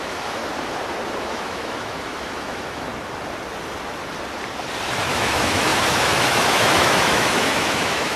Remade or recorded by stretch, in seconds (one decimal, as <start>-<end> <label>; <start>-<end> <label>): 0.0-0.4 remade; 0.4-1.2 recorded; 1.2-2.9 remade; 2.9-5.1 recorded; 5.1-8.2 remade